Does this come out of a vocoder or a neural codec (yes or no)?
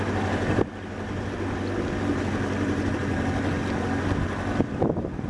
no